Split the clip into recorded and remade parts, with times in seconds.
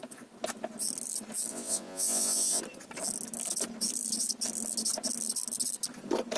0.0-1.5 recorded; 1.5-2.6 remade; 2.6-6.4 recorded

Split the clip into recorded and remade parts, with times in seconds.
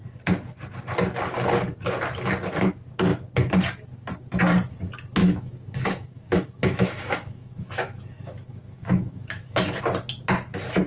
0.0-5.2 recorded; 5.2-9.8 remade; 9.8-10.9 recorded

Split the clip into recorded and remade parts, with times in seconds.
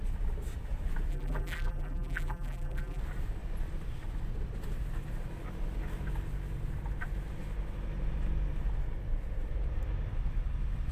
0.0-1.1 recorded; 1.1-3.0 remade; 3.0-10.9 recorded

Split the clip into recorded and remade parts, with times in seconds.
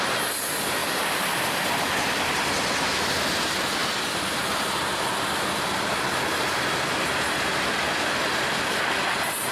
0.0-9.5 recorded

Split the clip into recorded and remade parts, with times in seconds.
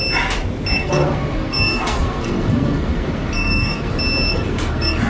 0.0-0.8 recorded; 0.8-3.9 remade; 3.9-4.3 recorded; 4.3-5.1 remade